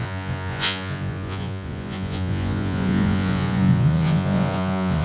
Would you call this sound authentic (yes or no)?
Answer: no